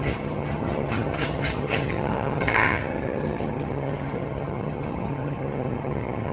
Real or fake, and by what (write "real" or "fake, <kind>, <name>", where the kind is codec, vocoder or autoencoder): fake, vocoder, HiFi-GAN